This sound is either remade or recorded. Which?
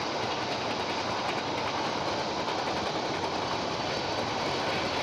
recorded